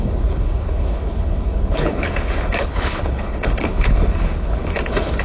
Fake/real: fake